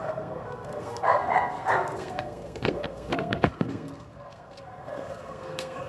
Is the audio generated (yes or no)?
yes